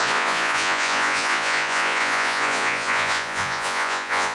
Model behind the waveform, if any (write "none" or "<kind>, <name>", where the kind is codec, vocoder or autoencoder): vocoder, Vocos